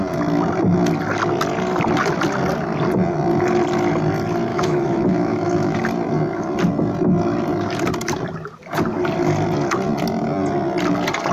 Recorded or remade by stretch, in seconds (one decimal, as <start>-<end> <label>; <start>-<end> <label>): 0.0-4.5 recorded; 4.5-5.8 remade; 5.8-11.3 recorded